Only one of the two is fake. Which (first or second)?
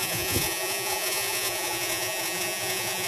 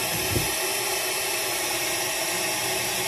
first